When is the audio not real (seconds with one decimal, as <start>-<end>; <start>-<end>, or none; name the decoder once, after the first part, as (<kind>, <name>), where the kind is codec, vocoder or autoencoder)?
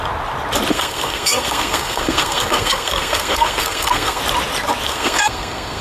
0.7-4.2 (codec, SNAC); 4.9-5.8